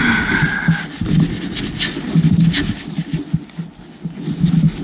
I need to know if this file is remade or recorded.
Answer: recorded